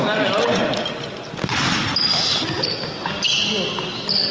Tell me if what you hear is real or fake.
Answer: real